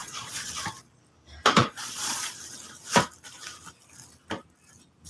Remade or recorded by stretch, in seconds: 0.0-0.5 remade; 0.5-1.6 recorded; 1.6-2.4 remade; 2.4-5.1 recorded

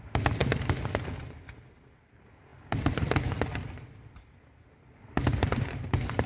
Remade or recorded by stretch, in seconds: 0.0-2.5 recorded; 2.5-6.3 remade

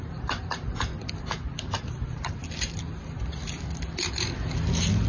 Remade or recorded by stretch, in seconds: 0.0-0.9 remade; 0.9-1.9 recorded; 1.9-2.4 remade; 2.4-5.1 recorded

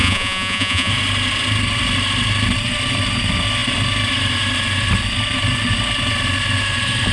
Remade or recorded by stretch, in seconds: 0.0-0.9 remade; 0.9-7.1 recorded

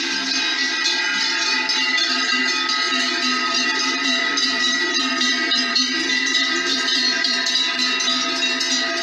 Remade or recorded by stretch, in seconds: 0.0-1.9 recorded; 1.9-2.4 remade; 2.4-3.4 recorded; 3.4-7.6 remade; 7.6-9.0 recorded